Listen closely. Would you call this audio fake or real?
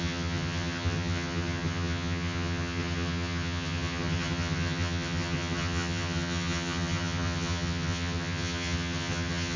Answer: fake